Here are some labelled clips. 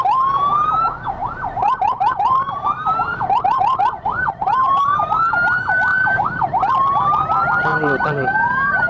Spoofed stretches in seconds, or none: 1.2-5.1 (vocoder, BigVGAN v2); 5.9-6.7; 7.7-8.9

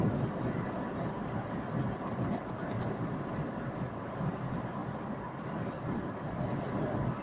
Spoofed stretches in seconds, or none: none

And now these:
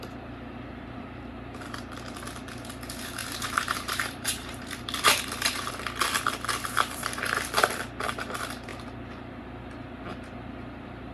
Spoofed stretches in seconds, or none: 3.2-5.7 (vocoder, BigVGAN v2)

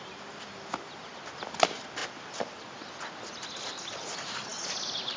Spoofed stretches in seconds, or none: none